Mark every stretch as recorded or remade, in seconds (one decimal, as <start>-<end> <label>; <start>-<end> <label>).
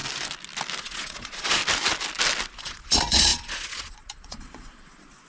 0.0-0.8 recorded; 0.8-1.6 remade; 1.6-2.6 recorded; 2.6-5.3 remade